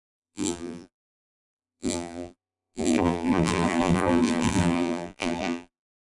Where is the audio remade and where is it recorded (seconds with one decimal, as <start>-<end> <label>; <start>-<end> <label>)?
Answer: 0.0-6.2 remade